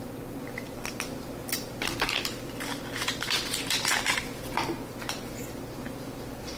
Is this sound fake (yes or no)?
no